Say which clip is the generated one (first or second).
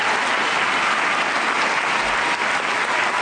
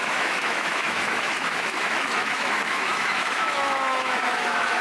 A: second